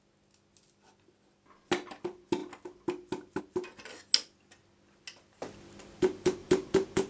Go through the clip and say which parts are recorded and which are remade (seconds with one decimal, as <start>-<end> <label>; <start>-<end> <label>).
0.0-7.1 recorded